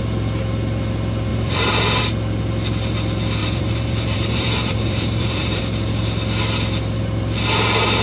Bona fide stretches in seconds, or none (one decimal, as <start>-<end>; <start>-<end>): 0.0-1.3; 2.0-3.4; 5.6-8.0